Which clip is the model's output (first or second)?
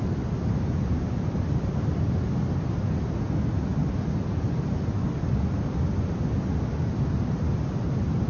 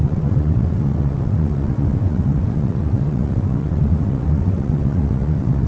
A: second